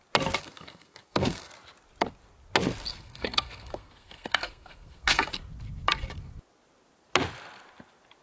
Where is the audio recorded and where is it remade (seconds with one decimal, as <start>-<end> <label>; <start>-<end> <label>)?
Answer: 0.0-0.4 recorded; 0.4-1.5 remade; 1.5-2.9 recorded; 2.9-5.3 remade; 5.3-8.2 recorded